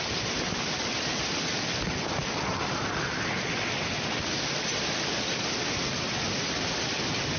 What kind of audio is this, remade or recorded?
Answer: recorded